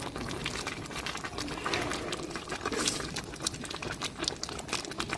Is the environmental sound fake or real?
real